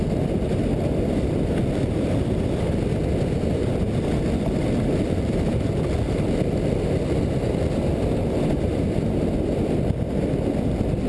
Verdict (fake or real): real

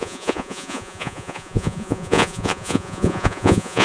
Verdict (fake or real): fake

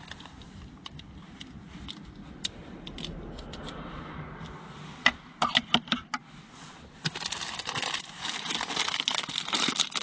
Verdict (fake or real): real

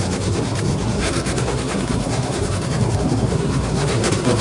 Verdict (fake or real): fake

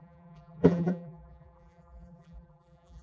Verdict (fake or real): fake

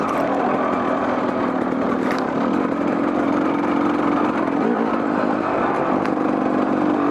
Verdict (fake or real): real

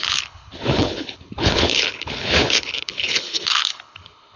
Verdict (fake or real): fake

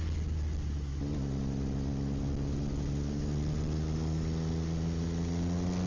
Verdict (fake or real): real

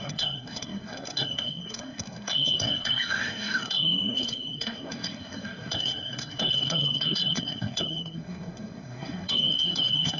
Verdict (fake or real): fake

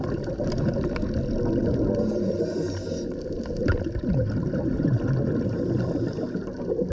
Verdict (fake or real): real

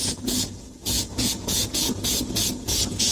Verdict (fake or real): fake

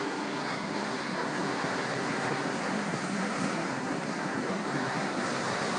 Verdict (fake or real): fake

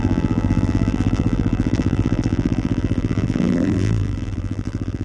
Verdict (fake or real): fake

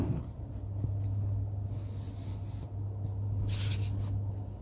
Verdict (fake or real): real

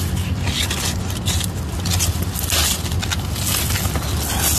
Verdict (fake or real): real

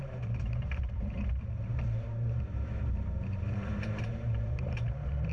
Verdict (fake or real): fake